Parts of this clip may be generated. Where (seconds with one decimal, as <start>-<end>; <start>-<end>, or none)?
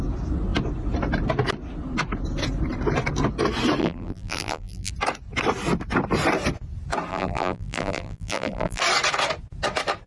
3.8-4.9; 7.1-8.8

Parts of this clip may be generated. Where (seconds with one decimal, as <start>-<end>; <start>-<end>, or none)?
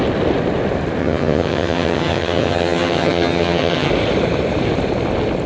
1.0-3.9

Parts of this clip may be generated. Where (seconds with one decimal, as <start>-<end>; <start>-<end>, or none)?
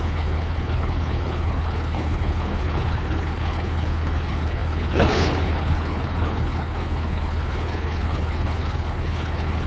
0.0-9.7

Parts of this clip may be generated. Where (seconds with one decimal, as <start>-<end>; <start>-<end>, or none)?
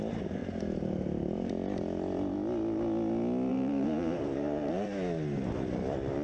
0.4-1.5; 3.5-4.7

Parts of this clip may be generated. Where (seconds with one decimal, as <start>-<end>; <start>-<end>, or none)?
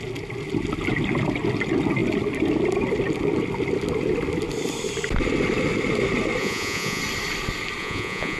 6.4-7.0; 7.8-8.4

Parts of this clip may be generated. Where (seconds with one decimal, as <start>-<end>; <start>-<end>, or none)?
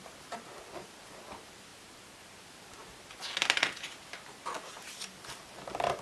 none